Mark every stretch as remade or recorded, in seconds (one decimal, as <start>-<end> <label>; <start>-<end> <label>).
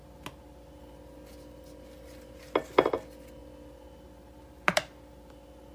0.0-5.7 recorded